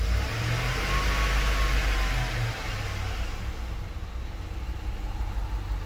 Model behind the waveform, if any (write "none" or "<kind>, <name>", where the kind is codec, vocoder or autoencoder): none